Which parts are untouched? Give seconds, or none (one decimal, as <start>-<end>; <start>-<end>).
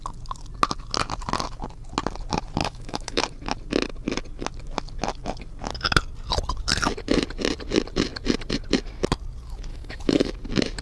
0.0-2.6; 3.2-9.7; 10.3-10.8